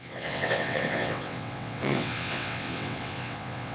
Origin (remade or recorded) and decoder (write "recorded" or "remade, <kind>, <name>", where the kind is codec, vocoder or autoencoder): remade, vocoder, WaveNeXt